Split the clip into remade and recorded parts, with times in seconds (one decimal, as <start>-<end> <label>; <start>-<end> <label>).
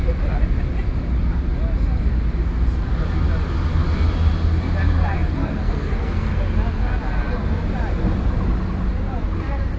0.0-5.4 recorded; 5.4-6.4 remade; 6.4-9.8 recorded